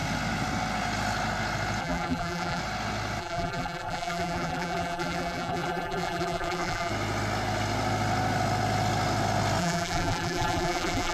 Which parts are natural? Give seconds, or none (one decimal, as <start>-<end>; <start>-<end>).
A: 0.0-1.8; 2.6-3.2; 6.9-9.6